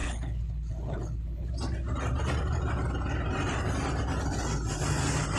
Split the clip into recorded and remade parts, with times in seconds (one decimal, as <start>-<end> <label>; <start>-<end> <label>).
0.0-1.5 remade; 1.5-5.4 recorded